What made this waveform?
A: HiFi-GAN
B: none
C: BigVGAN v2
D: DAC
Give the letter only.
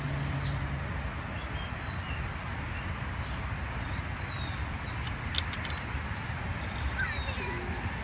B